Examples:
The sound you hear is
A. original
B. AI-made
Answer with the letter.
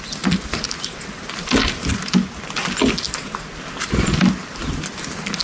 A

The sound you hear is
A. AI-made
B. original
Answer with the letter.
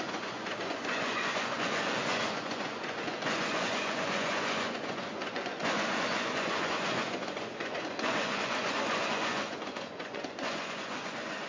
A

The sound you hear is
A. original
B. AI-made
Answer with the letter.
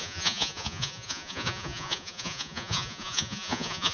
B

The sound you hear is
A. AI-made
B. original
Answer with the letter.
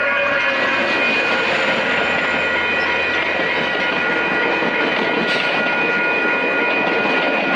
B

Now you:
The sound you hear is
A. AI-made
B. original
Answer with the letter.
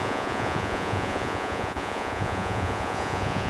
A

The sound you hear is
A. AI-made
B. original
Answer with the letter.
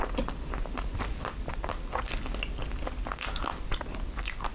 B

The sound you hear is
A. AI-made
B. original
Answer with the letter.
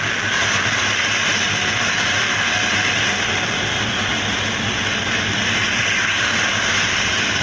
B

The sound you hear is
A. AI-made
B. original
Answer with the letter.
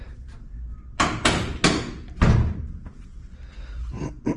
B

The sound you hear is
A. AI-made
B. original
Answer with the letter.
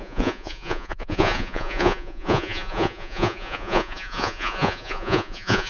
A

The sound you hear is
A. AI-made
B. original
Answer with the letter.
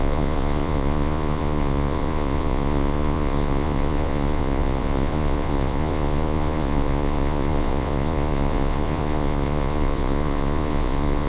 A